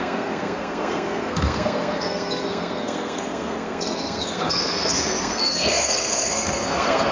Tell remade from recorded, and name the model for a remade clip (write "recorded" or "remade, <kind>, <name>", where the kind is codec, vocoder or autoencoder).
remade, codec, SNAC